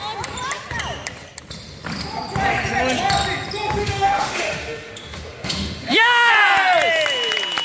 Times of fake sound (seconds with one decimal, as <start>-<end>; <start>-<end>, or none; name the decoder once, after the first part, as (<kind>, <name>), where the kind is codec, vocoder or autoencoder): 3.8-6.3 (autoencoder, DAC-VAE)